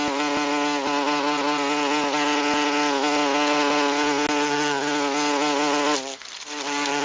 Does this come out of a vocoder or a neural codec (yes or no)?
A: no